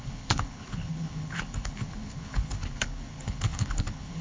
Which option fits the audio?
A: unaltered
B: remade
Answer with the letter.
B